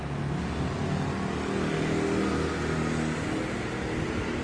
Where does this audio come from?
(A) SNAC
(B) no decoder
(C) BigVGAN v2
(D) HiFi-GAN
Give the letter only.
B